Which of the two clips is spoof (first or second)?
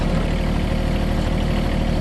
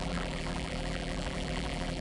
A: second